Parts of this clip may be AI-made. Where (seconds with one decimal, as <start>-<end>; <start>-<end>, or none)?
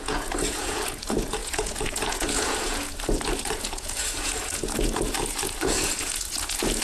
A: 0.0-6.8